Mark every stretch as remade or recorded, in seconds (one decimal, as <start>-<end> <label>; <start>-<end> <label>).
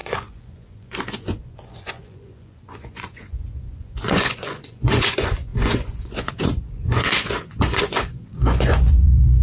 0.0-9.4 remade